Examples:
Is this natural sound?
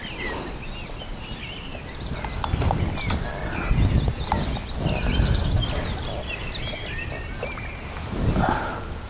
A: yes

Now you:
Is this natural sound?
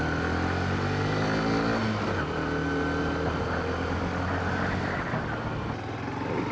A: yes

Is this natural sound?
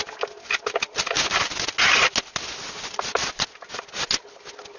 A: yes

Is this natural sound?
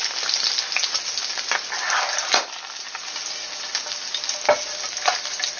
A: yes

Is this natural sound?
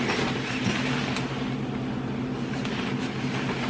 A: yes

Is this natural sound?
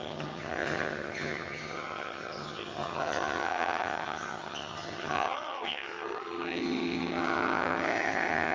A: no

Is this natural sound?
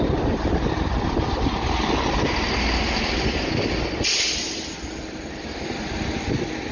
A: yes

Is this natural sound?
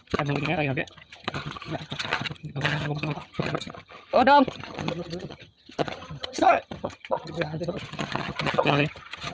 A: no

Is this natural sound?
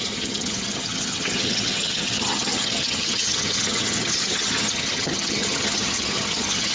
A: no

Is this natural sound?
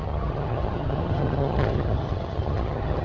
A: no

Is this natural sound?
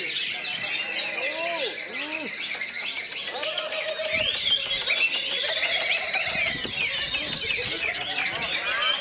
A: yes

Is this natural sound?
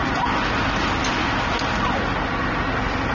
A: yes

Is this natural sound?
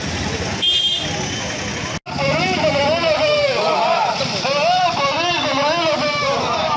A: yes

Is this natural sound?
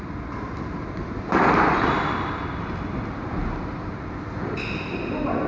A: yes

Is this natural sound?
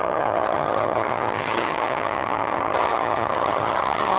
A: no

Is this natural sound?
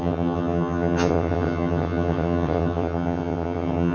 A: no